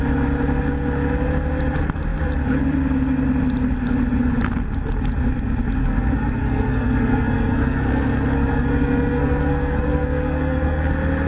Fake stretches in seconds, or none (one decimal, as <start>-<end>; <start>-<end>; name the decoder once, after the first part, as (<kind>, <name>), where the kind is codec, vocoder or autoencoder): 5.8-10.9 (codec, SNAC)